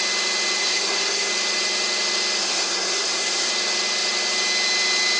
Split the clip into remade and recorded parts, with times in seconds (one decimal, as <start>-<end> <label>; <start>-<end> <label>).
0.0-0.6 recorded; 0.6-1.3 remade; 1.3-2.4 recorded; 2.4-3.5 remade; 3.5-5.2 recorded